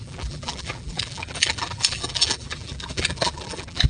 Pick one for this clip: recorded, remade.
remade